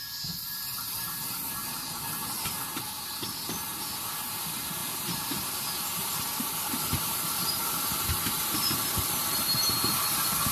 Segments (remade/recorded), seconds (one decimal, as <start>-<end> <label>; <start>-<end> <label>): 0.0-10.5 recorded